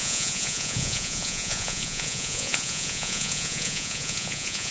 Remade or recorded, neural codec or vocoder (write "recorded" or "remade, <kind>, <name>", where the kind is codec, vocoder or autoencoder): remade, vocoder, Vocos